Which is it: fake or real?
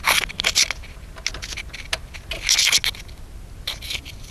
real